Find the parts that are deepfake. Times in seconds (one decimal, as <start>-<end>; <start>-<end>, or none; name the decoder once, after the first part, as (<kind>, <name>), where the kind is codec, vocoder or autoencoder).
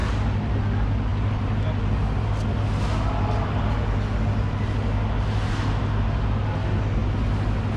none